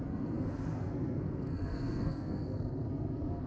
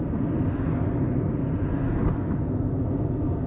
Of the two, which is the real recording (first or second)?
second